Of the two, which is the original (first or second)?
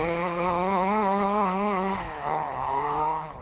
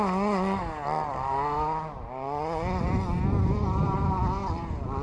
second